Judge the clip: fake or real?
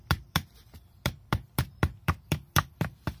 fake